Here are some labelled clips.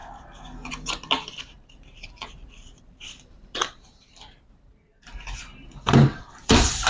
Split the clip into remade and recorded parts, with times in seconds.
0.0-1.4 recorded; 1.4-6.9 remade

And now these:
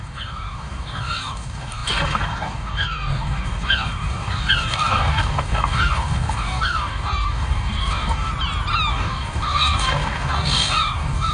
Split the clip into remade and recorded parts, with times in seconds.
0.0-8.3 remade; 8.3-8.9 recorded; 8.9-11.3 remade

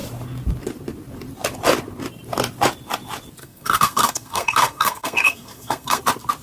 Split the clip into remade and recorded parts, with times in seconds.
0.0-3.4 recorded; 3.4-6.0 remade; 6.0-6.4 recorded

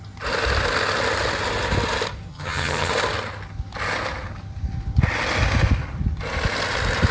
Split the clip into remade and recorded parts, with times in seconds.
0.0-2.3 recorded; 2.3-2.9 remade; 2.9-7.1 recorded

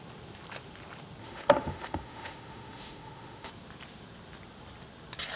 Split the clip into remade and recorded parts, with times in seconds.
0.0-1.2 recorded; 1.2-3.5 remade; 3.5-5.4 recorded

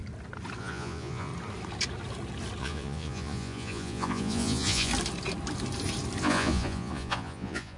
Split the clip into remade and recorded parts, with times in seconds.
0.0-0.6 recorded; 0.6-1.3 remade; 1.3-2.6 recorded; 2.6-4.9 remade; 4.9-6.2 recorded; 6.2-7.8 remade